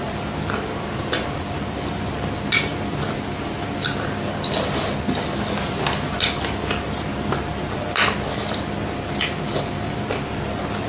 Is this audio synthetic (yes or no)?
no